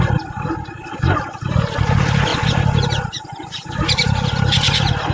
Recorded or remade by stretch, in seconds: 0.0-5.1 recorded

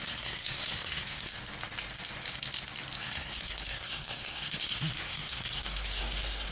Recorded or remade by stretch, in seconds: 0.0-1.4 remade; 1.4-3.0 recorded; 3.0-6.5 remade

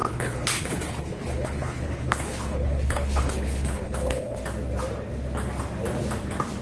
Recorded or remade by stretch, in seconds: 0.0-4.4 remade; 4.4-6.6 recorded

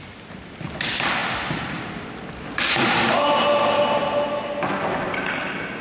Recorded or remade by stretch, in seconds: 0.0-1.2 recorded; 1.2-1.8 remade; 1.8-5.8 recorded

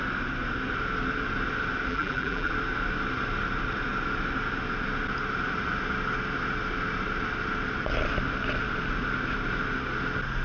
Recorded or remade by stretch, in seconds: 0.0-1.9 recorded; 1.9-2.5 remade; 2.5-10.4 recorded

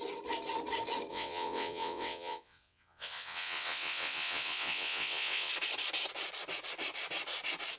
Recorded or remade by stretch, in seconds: 0.0-1.1 recorded; 1.1-5.5 remade; 5.5-7.8 recorded

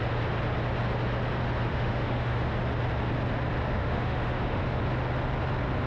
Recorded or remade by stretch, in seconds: 0.0-1.7 recorded; 1.7-2.5 remade; 2.5-3.8 recorded; 3.8-4.8 remade; 4.8-5.9 recorded